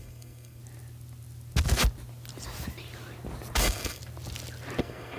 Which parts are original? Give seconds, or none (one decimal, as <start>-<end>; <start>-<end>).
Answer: 0.6-3.6; 4.0-4.8